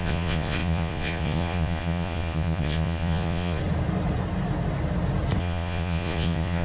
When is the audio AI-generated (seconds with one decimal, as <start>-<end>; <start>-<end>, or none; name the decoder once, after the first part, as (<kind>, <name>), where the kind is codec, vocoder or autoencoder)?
0.0-3.6 (vocoder, Vocos); 5.4-6.6